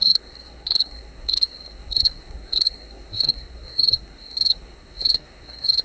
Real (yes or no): no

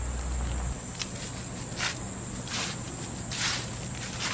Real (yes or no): yes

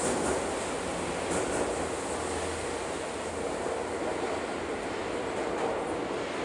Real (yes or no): yes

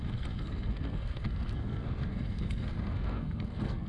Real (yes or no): no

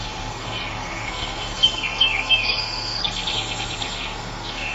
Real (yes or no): no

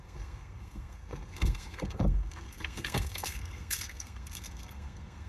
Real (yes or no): no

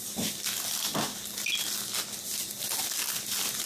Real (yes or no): yes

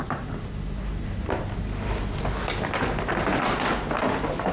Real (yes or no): yes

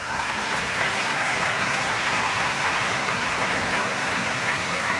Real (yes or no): no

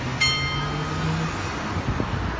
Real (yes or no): yes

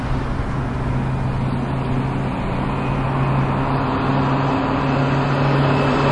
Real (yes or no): yes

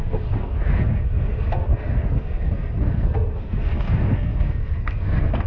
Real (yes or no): no